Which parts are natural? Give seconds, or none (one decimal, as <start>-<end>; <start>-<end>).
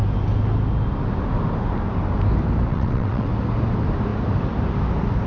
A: 0.0-2.7; 3.3-5.3